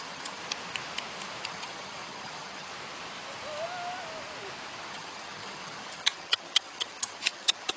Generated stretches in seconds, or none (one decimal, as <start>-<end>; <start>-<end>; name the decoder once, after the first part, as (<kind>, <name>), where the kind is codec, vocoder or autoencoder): 0.0-0.4 (vocoder, HiFi-GAN); 1.5-2.7; 4.9-7.8